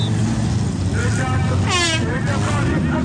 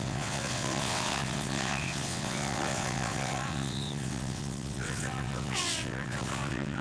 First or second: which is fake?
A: second